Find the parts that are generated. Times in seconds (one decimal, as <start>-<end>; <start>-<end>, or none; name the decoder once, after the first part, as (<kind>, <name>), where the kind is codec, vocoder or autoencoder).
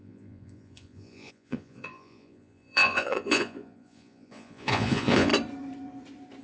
0.0-5.3 (vocoder, Vocos)